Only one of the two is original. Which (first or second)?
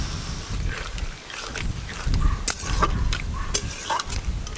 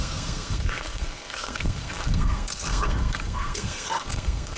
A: first